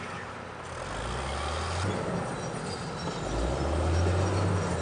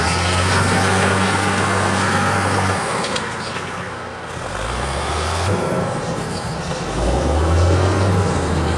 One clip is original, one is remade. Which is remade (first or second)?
second